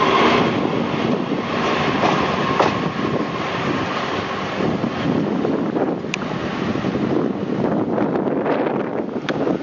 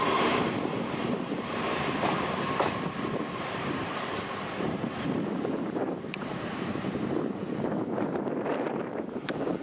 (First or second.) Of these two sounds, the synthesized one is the second